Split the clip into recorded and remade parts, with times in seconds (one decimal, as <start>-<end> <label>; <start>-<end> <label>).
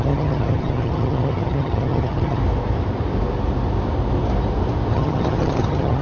0.0-2.4 remade; 2.4-4.9 recorded; 4.9-6.0 remade